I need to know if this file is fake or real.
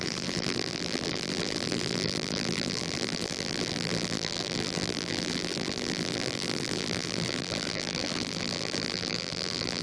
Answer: fake